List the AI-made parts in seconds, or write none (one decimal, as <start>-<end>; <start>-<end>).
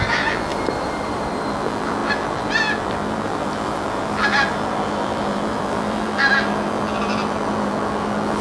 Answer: 0.0-0.5; 1.5-8.4